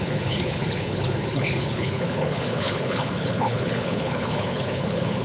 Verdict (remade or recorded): remade